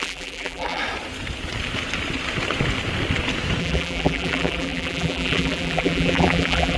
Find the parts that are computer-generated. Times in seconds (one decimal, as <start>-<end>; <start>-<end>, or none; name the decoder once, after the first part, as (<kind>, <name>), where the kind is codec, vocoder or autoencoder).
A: 0.0-0.8 (vocoder, BigVGAN v2); 3.6-6.8